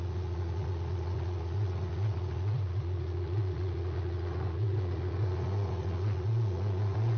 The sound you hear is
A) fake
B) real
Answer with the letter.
A